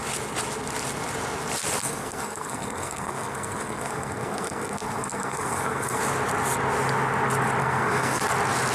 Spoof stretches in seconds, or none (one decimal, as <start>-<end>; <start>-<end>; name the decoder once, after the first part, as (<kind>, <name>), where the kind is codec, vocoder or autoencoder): 1.8-6.0 (codec, SNAC); 7.6-8.2